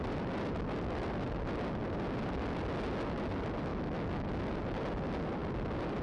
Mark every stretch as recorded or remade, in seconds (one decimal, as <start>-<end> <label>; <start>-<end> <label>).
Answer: 0.0-3.7 recorded; 3.7-4.3 remade; 4.3-6.0 recorded